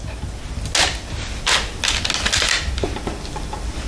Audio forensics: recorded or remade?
recorded